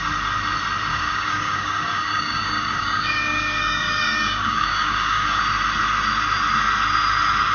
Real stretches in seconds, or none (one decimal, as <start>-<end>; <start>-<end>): 0.0-0.9; 5.4-7.5